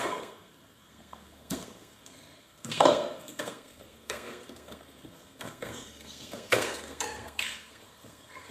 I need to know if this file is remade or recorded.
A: remade